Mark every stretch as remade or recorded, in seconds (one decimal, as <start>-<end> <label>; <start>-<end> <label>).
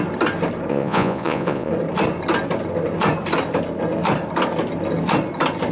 0.0-0.7 recorded; 0.7-1.7 remade; 1.7-5.7 recorded